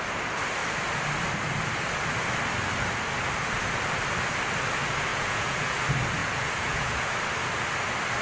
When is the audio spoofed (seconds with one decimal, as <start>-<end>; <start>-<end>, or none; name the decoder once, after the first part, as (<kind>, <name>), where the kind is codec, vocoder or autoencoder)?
5.1-5.8 (vocoder, Vocos); 6.2-7.1

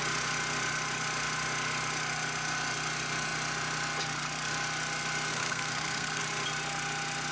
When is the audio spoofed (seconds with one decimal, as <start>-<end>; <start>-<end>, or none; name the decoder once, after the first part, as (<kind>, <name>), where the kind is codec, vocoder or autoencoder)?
5.3-6.2 (codec, SNAC)